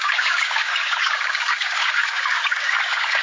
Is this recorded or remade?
remade